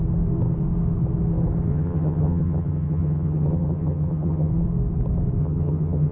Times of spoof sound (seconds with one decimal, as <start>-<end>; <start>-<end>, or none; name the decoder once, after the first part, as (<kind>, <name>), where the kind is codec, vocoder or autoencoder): 1.7-4.5 (vocoder, HiFi-GAN); 5.4-6.1